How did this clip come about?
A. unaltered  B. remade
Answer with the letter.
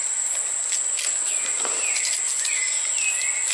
A